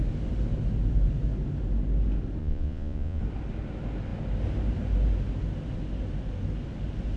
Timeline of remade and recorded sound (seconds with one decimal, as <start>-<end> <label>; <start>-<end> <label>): 0.0-2.4 recorded; 2.4-3.2 remade; 3.2-7.2 recorded